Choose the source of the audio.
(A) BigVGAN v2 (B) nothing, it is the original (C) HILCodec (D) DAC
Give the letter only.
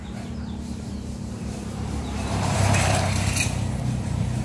A